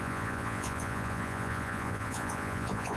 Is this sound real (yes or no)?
no